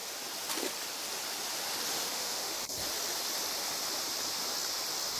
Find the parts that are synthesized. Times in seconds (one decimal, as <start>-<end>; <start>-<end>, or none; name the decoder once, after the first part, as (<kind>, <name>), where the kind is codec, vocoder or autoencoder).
2.0-2.6 (autoencoder, DAC-VAE)